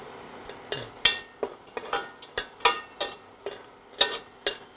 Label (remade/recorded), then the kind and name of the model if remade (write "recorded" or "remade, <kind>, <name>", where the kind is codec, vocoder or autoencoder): recorded